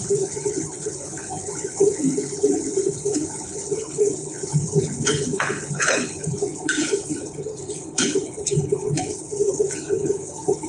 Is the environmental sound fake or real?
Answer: fake